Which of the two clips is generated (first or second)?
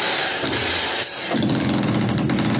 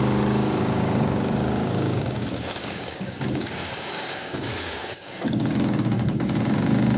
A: second